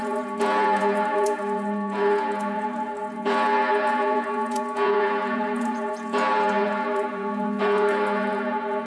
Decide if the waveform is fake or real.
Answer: fake